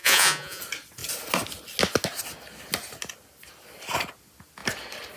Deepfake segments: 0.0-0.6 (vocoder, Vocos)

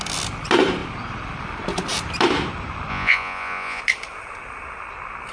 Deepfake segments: 2.9-3.8 (vocoder, Vocos)

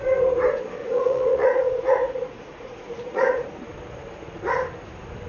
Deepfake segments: 0.8-3.5 (vocoder, Vocos)